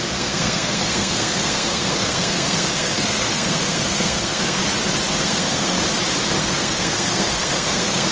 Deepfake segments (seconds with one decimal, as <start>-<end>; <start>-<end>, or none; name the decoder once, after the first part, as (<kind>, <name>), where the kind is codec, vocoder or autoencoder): 0.0-4.6 (codec, SNAC); 5.2-5.8; 6.4-8.1